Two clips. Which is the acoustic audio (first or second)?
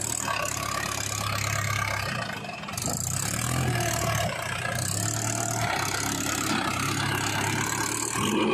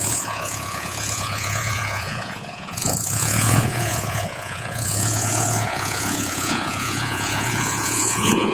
first